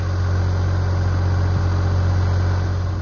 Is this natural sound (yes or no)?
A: yes